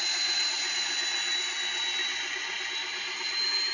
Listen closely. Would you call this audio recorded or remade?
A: recorded